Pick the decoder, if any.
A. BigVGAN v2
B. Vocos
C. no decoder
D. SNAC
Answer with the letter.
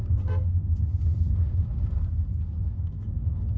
D